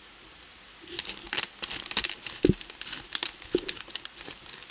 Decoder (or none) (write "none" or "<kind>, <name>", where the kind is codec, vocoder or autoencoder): none